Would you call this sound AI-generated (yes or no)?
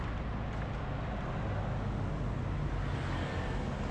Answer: no